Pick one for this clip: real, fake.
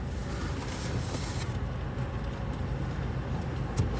real